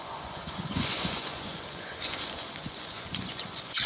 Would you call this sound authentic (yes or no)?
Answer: no